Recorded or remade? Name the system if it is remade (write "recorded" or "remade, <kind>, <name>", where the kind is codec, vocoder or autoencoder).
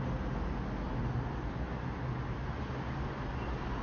recorded